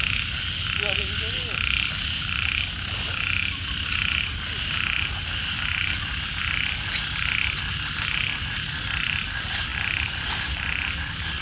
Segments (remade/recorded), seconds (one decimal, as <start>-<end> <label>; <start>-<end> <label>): 0.0-11.4 recorded